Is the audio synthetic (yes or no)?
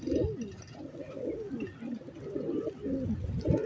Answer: no